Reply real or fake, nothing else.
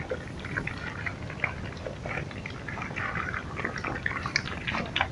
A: real